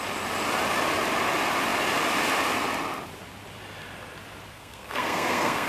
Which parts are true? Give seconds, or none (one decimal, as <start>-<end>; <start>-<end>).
0.0-4.5